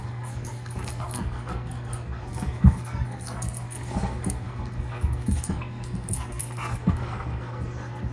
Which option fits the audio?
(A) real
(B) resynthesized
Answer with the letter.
B